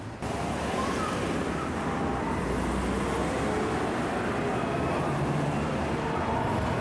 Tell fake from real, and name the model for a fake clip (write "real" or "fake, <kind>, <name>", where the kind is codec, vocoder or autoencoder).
real